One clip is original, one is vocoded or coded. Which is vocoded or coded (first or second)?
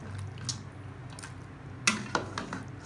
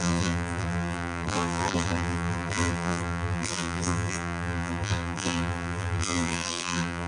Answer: second